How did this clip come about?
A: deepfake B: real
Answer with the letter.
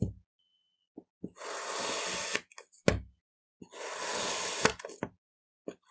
B